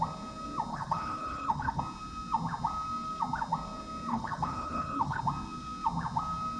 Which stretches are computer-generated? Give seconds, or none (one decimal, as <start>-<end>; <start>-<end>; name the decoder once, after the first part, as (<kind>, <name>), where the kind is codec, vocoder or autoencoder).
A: 0.7-1.8 (codec, HILCodec); 4.1-5.2